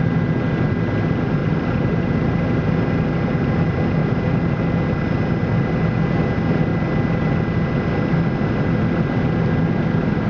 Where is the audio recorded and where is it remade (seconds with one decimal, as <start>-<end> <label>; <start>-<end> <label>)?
0.0-1.4 recorded; 1.4-2.7 remade; 2.7-4.0 recorded; 4.0-4.8 remade; 4.8-10.3 recorded